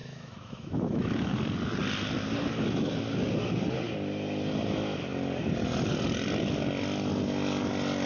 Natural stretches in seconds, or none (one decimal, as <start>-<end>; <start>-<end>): 1.3-8.1

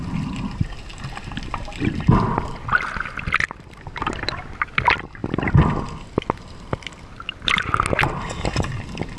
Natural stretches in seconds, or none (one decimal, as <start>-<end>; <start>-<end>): 0.0-9.2

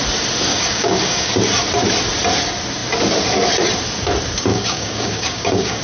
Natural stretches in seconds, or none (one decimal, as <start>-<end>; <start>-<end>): 0.0-0.5; 1.3-4.5